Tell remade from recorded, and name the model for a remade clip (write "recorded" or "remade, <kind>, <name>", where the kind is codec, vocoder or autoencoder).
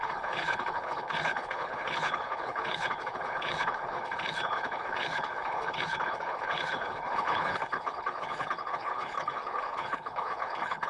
remade, codec, HILCodec